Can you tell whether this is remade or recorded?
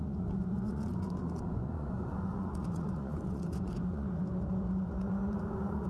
remade